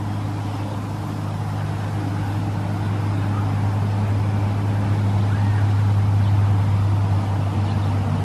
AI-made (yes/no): no